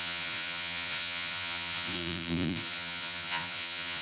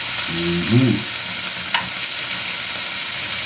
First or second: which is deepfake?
first